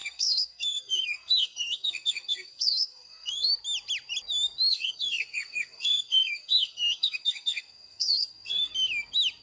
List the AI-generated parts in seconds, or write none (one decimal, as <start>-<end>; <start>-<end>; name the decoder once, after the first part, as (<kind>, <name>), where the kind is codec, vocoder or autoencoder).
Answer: 0.0-3.5 (codec, SNAC); 4.7-8.7